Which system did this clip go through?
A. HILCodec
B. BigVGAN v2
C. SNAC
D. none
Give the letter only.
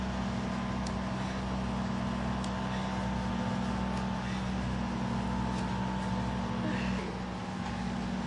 D